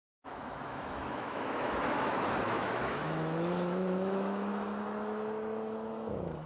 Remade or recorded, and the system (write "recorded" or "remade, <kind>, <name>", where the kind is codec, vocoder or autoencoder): remade, autoencoder, DAC-VAE